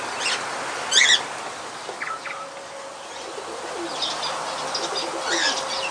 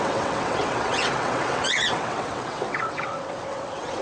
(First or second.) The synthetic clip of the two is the second